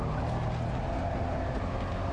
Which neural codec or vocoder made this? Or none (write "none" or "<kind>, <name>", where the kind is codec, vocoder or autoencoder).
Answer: none